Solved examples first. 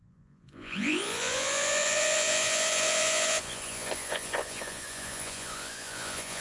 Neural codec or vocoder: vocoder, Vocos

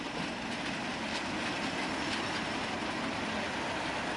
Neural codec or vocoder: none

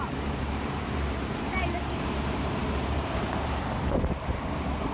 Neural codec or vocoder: vocoder, BigVGAN v2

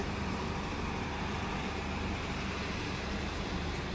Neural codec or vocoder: vocoder, BigVGAN v2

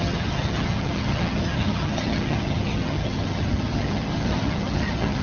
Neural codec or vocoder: vocoder, HiFi-GAN